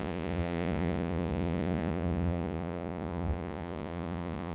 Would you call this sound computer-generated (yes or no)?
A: yes